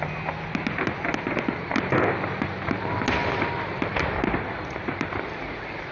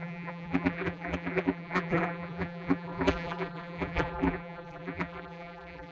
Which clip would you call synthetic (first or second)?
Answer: second